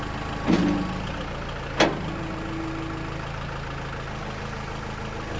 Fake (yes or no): no